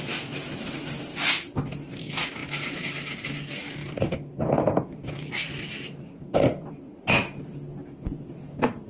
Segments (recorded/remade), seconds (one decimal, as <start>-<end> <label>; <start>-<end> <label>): 0.0-8.9 recorded